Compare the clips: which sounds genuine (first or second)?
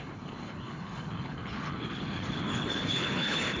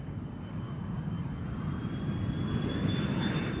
second